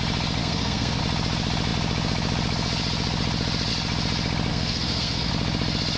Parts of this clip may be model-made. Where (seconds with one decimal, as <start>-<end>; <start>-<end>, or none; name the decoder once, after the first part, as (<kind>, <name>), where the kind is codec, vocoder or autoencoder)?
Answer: 0.4-1.0 (codec, SNAC); 4.5-5.3